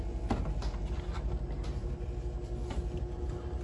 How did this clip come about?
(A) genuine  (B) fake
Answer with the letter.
A